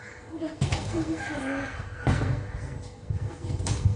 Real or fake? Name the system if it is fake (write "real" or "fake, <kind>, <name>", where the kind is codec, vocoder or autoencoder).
fake, codec, SNAC